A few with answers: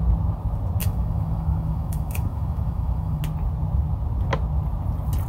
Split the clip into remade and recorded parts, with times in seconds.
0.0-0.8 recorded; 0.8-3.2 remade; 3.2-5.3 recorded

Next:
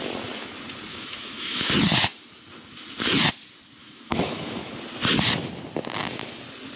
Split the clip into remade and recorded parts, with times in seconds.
0.0-0.9 recorded; 0.9-1.7 remade; 1.7-3.8 recorded; 3.8-4.7 remade; 4.7-6.8 recorded

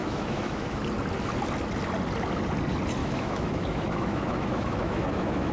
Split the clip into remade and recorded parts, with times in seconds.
0.0-0.8 remade; 0.8-3.0 recorded; 3.0-5.5 remade

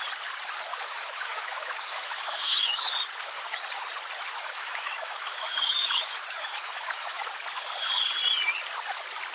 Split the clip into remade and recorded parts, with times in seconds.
0.0-0.7 recorded; 0.7-2.9 remade; 2.9-4.3 recorded; 4.3-7.2 remade; 7.2-9.3 recorded

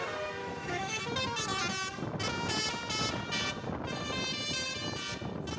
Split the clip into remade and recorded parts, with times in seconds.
0.0-0.4 recorded; 0.4-1.0 remade; 1.0-5.6 recorded